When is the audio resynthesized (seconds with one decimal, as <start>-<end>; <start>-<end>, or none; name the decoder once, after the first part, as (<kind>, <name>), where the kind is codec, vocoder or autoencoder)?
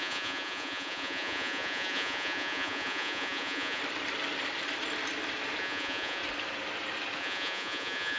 0.0-3.8 (vocoder, Vocos); 5.6-6.2; 7.2-8.2